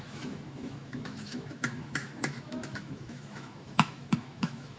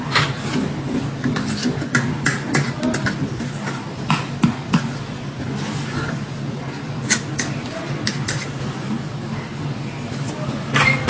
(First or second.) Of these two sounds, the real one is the second